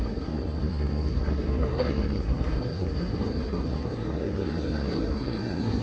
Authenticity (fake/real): fake